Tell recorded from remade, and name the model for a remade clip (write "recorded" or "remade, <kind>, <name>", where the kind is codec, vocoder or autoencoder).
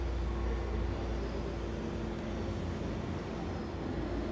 recorded